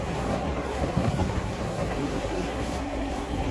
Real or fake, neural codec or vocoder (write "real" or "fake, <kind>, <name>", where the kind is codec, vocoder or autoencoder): fake, codec, SNAC